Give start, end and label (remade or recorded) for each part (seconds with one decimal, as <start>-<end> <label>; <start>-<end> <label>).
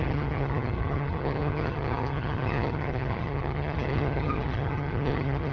0.0-5.5 remade